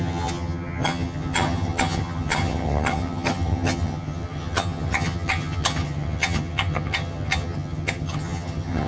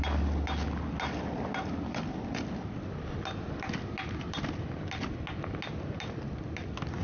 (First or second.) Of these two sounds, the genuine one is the second